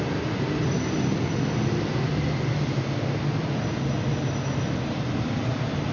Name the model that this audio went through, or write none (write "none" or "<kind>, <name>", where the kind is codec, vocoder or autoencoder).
none